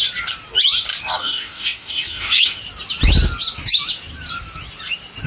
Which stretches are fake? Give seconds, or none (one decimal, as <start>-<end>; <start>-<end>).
1.2-2.6